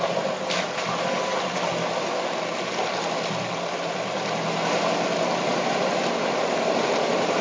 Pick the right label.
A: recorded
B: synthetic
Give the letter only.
A